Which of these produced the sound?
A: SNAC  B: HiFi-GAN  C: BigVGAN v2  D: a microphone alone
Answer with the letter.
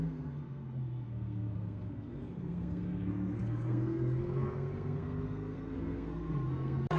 A